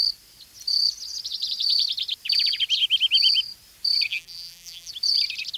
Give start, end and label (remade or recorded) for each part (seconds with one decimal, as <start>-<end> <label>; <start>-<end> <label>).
0.0-4.1 recorded; 4.1-4.9 remade; 4.9-5.6 recorded

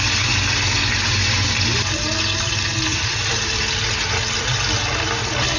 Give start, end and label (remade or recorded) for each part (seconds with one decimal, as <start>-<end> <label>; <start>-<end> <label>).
0.0-2.9 recorded; 2.9-3.6 remade; 3.6-5.6 recorded